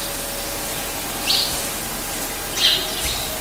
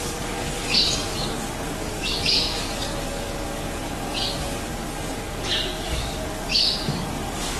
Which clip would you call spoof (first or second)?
second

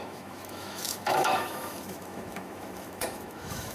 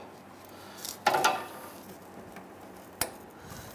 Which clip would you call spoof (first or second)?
first